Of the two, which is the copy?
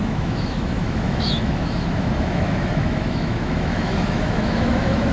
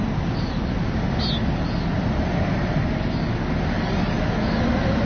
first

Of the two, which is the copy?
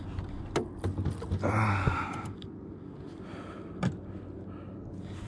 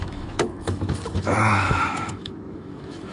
second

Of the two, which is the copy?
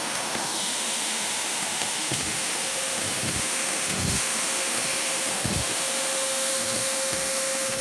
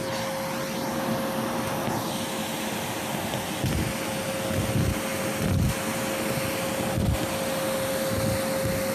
first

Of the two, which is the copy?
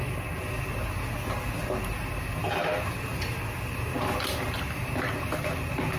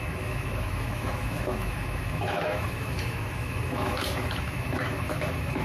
second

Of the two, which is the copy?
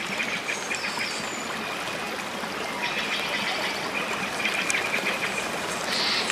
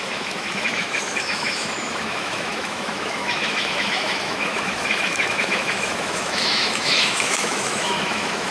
second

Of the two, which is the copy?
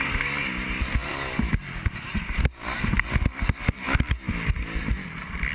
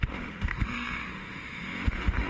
second